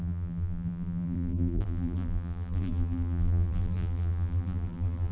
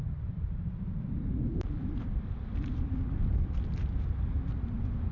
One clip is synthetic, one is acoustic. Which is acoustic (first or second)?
second